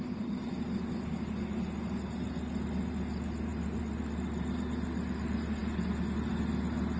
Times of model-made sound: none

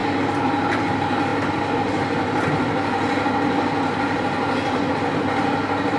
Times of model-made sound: none

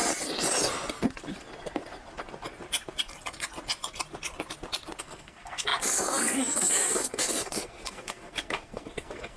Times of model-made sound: 5.0-9.4 (codec, SNAC)